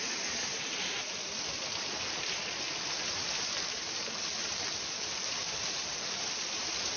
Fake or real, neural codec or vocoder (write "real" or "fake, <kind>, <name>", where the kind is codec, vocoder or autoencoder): fake, vocoder, BigVGAN v2